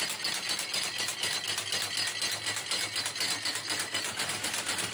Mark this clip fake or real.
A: real